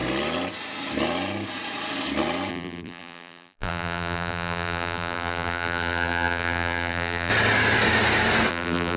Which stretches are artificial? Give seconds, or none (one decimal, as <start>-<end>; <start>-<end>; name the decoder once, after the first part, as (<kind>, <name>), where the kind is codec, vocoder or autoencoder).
2.5-7.3 (vocoder, BigVGAN v2); 8.5-9.0